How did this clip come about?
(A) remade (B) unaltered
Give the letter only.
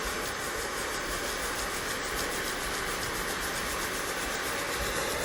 B